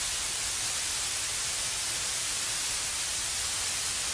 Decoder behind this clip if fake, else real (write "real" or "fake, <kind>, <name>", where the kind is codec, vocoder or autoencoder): real